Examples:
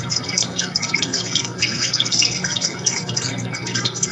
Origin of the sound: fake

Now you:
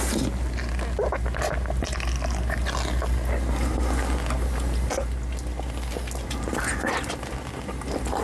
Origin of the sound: real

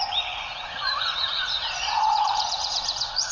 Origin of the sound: fake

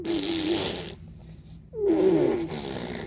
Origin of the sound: real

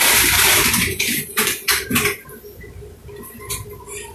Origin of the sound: fake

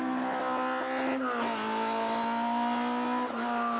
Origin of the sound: real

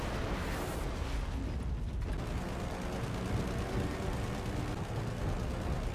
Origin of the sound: real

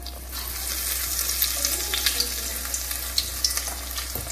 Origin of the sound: real